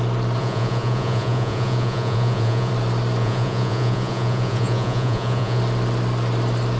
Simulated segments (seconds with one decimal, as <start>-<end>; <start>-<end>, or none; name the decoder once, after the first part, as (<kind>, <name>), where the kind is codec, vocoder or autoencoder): 0.4-2.7 (vocoder, Vocos); 3.2-5.6